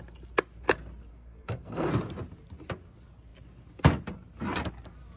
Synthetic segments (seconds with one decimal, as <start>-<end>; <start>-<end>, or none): 1.1-1.9

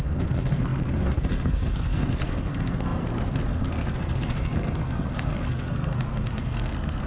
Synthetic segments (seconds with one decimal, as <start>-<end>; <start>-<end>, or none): 0.0-7.1

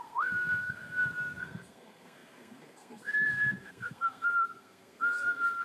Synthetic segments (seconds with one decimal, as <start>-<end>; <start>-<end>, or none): 0.0-5.6

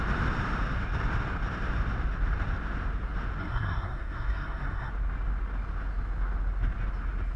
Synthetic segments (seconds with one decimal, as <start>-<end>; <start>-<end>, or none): 3.4-4.9

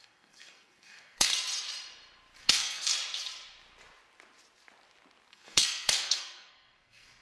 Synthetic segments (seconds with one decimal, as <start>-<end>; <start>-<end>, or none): 0.0-1.3; 2.4-2.9; 5.3-7.2

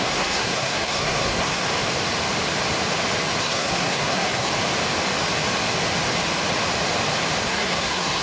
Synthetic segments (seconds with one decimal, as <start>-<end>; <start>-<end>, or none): 0.0-1.6; 3.4-4.5; 7.4-8.2